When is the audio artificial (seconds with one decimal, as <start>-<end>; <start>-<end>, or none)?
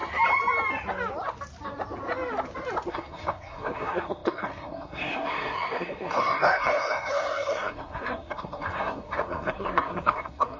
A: 2.9-10.6